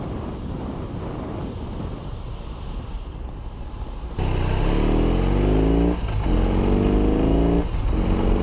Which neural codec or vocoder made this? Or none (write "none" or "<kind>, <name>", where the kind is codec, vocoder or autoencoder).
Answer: none